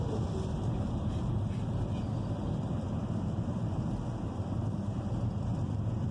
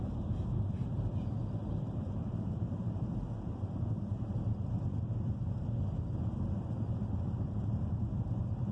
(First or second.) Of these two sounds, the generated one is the second